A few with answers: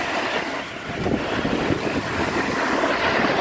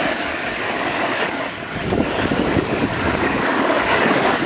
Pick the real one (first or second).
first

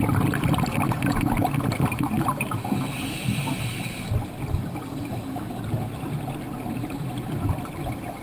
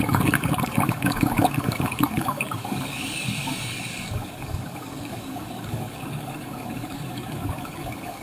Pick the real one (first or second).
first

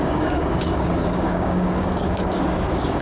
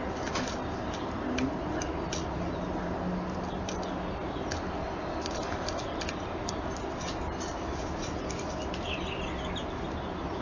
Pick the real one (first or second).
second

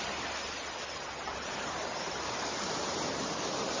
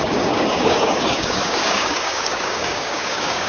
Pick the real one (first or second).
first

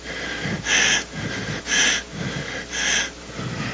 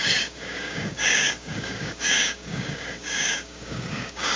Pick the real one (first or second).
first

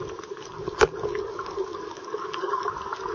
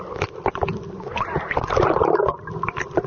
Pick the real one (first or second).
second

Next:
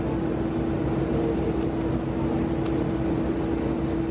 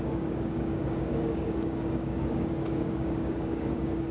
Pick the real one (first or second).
first